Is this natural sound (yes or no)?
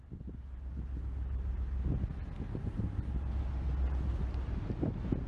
yes